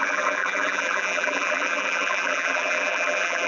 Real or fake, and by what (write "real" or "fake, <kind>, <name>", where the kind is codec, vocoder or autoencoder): fake, vocoder, BigVGAN v2